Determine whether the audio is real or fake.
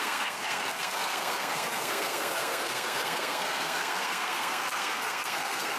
fake